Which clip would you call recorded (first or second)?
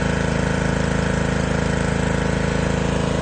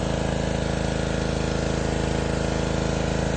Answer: second